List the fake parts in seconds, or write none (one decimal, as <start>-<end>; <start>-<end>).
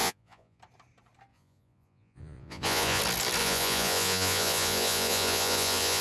0.0-0.6; 1.3-3.0; 3.4-6.0